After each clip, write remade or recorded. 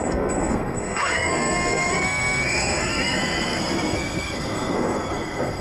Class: remade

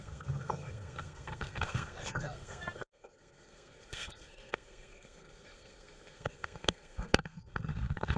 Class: remade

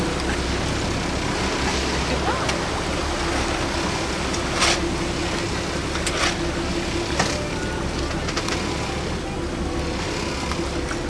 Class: recorded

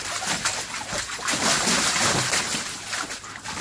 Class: recorded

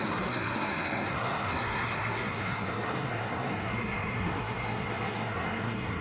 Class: remade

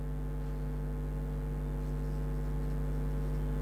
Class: recorded